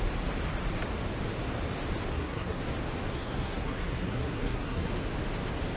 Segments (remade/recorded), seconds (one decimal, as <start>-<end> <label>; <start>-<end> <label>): 0.0-2.1 recorded; 2.1-2.6 remade; 2.6-3.1 recorded; 3.1-4.9 remade; 4.9-5.8 recorded